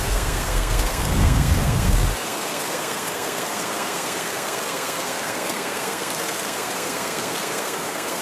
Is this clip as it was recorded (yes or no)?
no